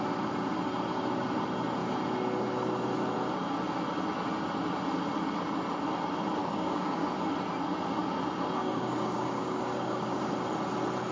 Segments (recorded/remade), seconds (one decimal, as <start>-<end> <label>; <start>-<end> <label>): 0.0-6.4 recorded; 6.4-7.0 remade; 7.0-8.6 recorded; 8.6-10.3 remade; 10.3-11.1 recorded